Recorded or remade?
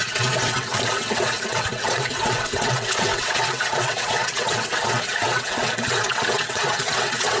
remade